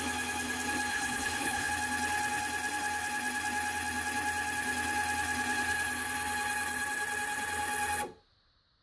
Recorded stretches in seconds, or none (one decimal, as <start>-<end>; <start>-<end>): 0.0-0.9; 1.7-8.8